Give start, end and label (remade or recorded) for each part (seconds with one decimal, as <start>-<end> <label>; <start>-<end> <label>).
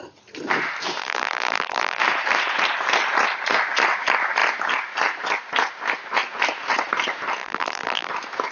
0.0-1.0 recorded; 1.0-2.0 remade; 2.0-7.4 recorded; 7.4-8.1 remade; 8.1-8.5 recorded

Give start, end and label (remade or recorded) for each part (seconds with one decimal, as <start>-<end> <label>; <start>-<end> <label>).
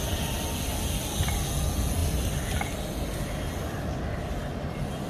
0.0-5.1 recorded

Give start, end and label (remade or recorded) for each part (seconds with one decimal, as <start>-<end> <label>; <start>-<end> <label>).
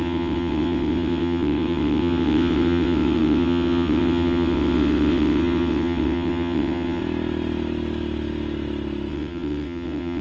0.0-7.0 remade; 7.0-9.1 recorded; 9.1-10.2 remade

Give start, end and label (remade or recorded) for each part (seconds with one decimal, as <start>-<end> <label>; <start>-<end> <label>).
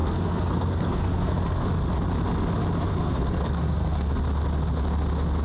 0.0-1.7 remade; 1.7-2.9 recorded; 2.9-4.1 remade; 4.1-5.4 recorded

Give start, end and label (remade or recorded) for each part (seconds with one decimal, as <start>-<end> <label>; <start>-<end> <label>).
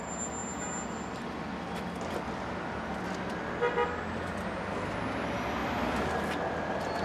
0.0-7.0 recorded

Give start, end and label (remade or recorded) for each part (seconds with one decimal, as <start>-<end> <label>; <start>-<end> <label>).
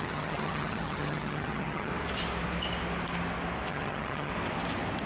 0.0-1.9 remade; 1.9-3.7 recorded; 3.7-4.3 remade; 4.3-5.1 recorded